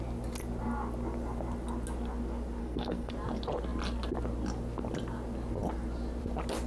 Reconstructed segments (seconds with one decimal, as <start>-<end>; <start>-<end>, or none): 2.6-3.1